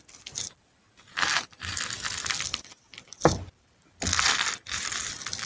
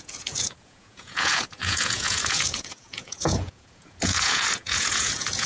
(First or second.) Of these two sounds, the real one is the first